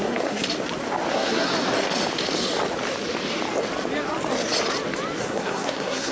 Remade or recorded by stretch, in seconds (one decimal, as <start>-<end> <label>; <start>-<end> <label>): 0.0-0.4 remade; 0.4-1.1 recorded; 1.1-1.5 remade; 1.5-5.2 recorded; 5.2-6.1 remade